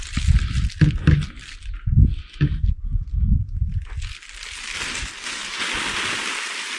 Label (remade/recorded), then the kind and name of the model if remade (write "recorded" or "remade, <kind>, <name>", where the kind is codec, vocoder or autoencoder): recorded